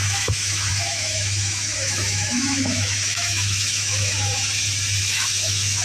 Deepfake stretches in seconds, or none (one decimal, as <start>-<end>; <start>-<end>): 0.0-4.4; 5.0-5.8